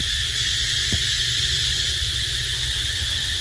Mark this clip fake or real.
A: fake